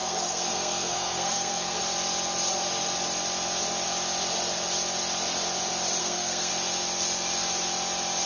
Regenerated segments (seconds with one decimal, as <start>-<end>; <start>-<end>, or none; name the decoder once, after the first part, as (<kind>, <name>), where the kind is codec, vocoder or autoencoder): 0.0-1.8 (codec, SNAC); 6.0-6.5